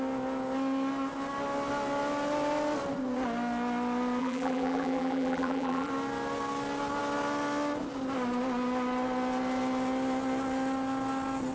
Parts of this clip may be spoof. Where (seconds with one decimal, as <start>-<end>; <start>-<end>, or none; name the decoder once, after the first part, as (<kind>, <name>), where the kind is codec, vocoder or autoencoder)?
4.2-5.9 (vocoder, BigVGAN v2)